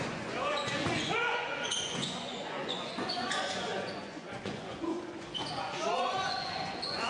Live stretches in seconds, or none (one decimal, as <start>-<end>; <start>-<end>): none